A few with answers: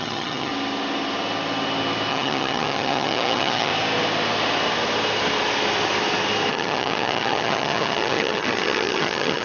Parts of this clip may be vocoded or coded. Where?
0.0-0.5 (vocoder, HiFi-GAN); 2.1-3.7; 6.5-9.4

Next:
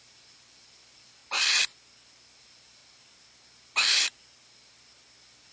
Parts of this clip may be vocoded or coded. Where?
0.0-1.2 (vocoder, BigVGAN v2); 2.4-2.8

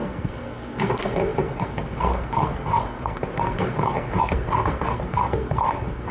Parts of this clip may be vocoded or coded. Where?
0.0-6.1 (codec, SNAC)